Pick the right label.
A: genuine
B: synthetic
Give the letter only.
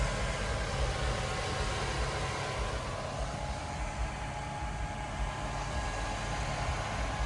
A